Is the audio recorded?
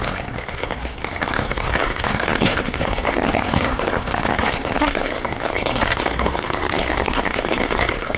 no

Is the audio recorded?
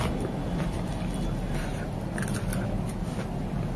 yes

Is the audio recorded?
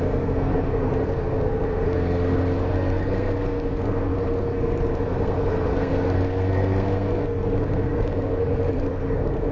no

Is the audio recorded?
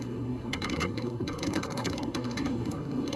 no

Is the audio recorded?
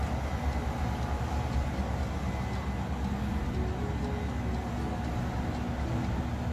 yes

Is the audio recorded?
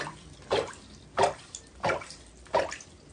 yes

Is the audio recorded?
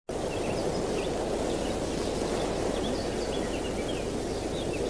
yes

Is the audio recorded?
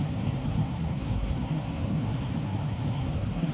no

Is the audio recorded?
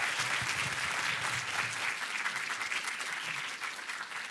yes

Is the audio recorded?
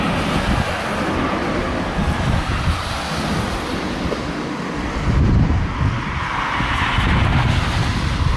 yes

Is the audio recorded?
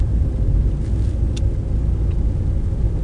yes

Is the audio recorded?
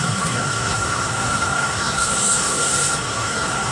no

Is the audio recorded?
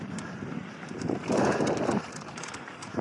yes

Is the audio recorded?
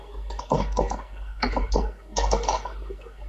no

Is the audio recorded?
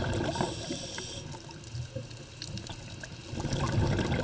yes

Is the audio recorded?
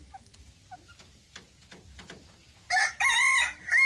yes